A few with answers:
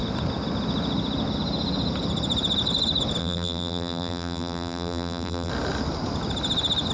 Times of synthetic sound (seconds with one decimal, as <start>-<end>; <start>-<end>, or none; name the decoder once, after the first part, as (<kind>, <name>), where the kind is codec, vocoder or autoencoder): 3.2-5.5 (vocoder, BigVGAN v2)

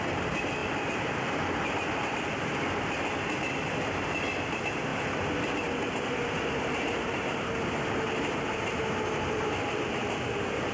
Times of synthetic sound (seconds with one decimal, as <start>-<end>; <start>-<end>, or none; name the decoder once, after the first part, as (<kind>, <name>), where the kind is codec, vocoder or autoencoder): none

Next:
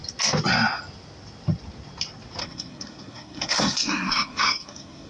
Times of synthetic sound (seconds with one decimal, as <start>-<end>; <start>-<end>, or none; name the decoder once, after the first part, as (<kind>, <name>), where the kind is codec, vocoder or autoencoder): 2.4-5.1 (codec, SNAC)

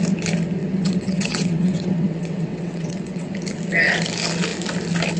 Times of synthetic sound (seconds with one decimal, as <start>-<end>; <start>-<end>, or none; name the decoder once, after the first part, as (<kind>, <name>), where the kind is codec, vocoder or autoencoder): 0.6-3.3 (vocoder, WaveNeXt)